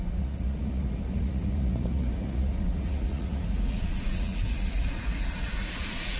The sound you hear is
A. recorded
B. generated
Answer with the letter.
B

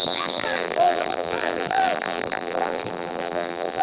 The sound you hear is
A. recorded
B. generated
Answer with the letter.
B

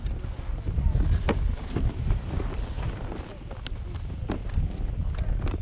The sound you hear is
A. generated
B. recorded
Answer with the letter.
B